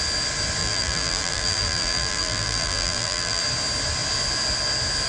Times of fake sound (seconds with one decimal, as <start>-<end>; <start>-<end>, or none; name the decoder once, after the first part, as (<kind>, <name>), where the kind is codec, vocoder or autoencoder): 0.6-3.4 (vocoder, BigVGAN v2)